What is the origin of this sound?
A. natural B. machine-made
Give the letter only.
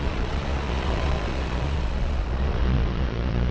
B